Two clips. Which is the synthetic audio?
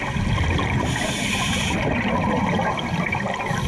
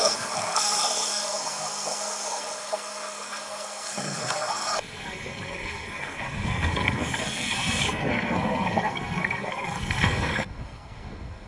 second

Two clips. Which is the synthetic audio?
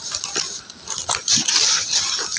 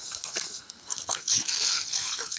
second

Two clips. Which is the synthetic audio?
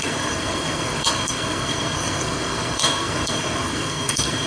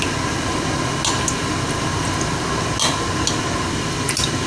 first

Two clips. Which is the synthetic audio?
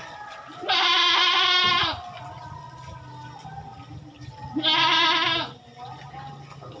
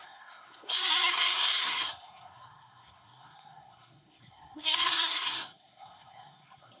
second